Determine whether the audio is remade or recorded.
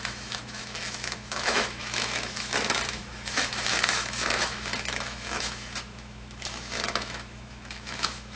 remade